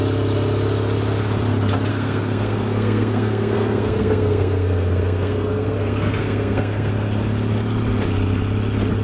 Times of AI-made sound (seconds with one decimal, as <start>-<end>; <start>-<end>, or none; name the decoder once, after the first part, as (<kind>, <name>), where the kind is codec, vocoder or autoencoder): 1.9-6.9 (codec, SNAC)